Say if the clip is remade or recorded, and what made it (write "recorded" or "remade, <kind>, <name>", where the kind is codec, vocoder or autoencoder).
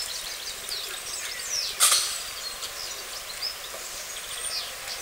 recorded